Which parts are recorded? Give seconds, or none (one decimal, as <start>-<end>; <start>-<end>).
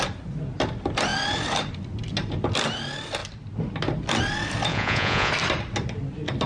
0.0-4.7; 5.3-6.5